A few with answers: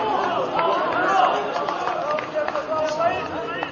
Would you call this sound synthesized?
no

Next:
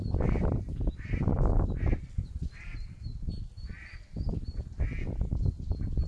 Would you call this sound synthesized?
yes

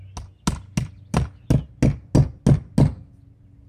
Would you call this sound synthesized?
no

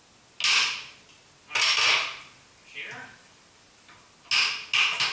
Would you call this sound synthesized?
no